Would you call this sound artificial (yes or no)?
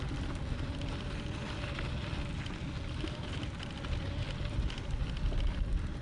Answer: no